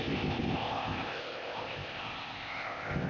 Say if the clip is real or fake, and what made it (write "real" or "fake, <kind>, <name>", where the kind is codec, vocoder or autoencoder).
fake, codec, ZipCodec